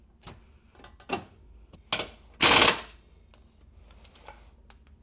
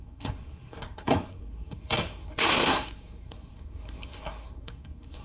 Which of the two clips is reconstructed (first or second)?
second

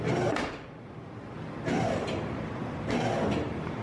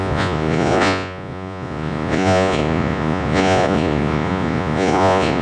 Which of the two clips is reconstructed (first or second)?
second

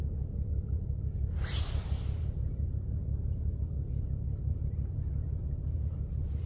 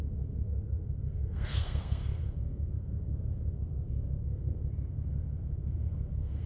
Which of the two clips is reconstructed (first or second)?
second